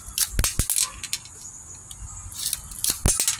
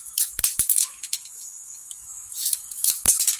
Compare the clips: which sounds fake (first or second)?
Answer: second